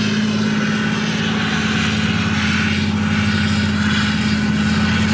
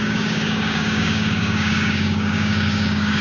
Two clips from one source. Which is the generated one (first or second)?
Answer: second